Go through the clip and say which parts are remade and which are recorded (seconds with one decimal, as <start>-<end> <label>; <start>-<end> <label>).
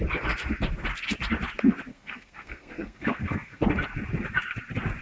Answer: 0.0-1.9 recorded; 1.9-3.6 remade; 3.6-5.0 recorded